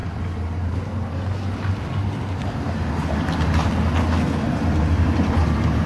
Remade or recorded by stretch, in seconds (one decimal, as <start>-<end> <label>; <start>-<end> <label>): 0.0-0.8 remade; 0.8-2.4 recorded; 2.4-3.7 remade; 3.7-5.9 recorded